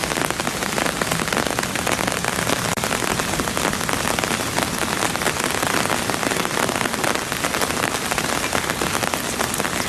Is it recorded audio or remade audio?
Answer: recorded